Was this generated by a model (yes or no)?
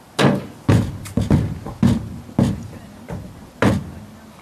no